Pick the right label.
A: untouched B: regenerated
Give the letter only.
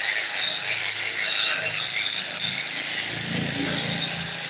A